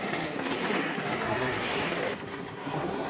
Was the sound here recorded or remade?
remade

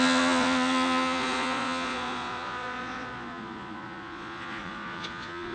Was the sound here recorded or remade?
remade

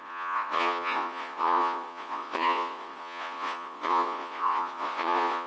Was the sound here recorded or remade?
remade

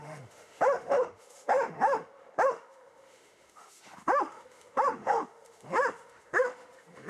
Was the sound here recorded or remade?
remade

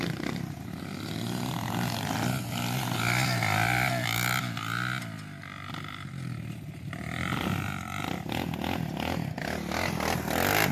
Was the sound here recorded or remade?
recorded